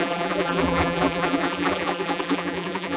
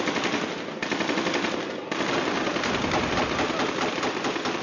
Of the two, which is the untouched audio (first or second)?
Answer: second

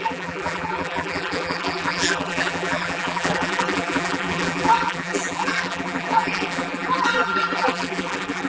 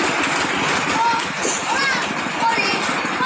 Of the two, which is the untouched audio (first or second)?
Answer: second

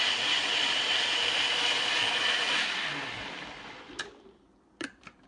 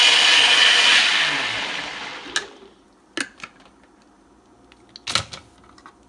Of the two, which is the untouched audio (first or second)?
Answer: second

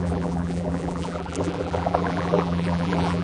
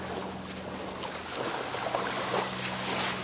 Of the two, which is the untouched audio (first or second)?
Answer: second